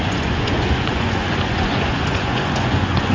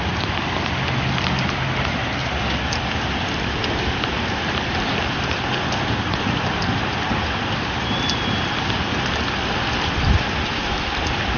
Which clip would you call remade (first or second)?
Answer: first